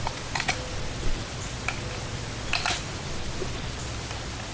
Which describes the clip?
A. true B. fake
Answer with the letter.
A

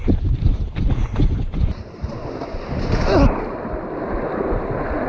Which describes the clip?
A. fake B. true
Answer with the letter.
B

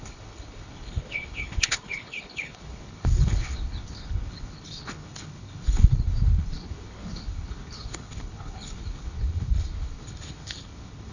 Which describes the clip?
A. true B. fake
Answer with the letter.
B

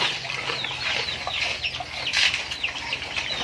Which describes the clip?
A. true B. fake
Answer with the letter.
A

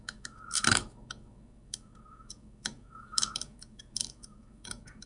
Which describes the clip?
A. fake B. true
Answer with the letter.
A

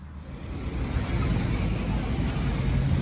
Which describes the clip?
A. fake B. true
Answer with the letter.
B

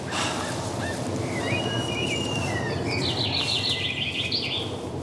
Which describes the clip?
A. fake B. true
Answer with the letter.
B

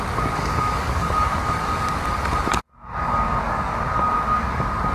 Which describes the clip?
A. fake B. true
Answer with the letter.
A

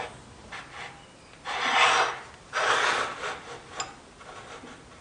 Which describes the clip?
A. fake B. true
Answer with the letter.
B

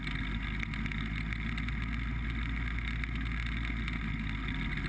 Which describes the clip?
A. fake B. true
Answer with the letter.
B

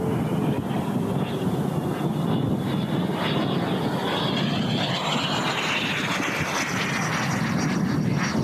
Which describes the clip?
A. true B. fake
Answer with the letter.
A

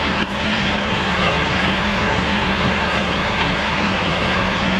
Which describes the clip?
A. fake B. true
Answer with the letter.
A